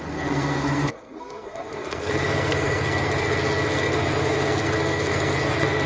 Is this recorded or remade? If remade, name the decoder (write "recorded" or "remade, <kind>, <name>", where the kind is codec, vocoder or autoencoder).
remade, codec, SNAC